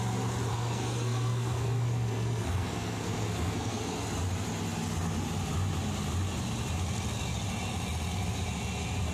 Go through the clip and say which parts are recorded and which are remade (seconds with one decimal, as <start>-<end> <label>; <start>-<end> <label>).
0.0-0.5 recorded; 0.5-3.8 remade; 3.8-9.1 recorded